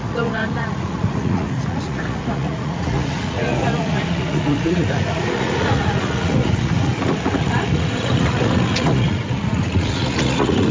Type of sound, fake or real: fake